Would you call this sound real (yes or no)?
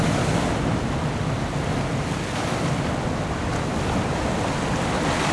yes